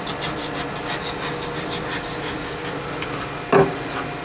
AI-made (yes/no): no